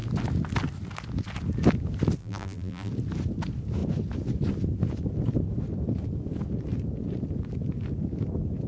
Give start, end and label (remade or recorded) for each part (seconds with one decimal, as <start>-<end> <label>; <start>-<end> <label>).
0.0-2.2 recorded; 2.2-2.9 remade; 2.9-8.7 recorded